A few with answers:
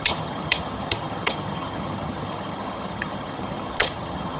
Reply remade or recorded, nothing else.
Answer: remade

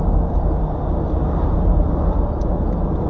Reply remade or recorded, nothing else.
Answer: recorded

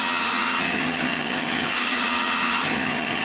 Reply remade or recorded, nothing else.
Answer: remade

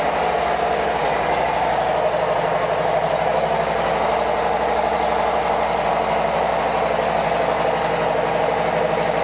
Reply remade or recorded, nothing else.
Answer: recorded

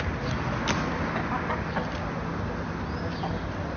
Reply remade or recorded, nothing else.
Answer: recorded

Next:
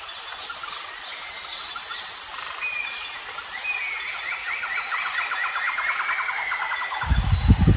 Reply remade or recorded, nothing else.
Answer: recorded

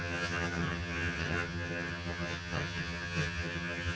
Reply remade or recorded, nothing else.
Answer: remade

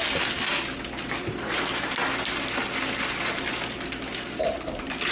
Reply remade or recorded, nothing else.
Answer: recorded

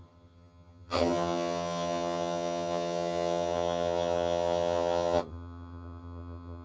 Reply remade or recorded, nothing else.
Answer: remade